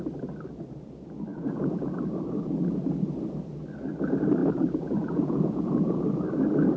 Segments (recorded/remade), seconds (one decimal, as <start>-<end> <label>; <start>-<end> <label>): 0.0-1.3 recorded; 1.3-1.9 remade; 1.9-4.4 recorded; 4.4-6.0 remade; 6.0-6.8 recorded